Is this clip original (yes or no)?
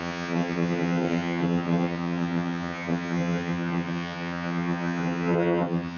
no